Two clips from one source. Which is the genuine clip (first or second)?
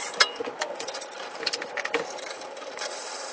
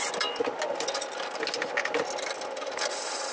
second